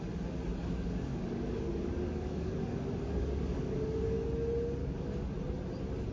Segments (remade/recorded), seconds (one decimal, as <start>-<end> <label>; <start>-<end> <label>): 0.0-0.6 recorded; 0.6-4.3 remade; 4.3-4.8 recorded; 4.8-5.3 remade; 5.3-6.1 recorded